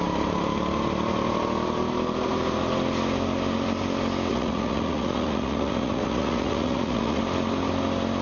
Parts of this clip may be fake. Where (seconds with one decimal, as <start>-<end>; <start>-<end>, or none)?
4.3-7.2